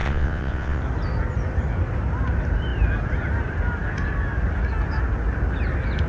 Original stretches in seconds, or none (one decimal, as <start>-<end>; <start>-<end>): 0.8-6.1